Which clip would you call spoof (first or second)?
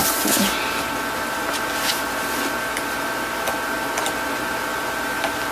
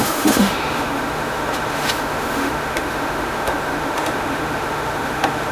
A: second